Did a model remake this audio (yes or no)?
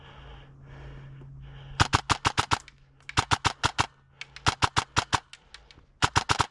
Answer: no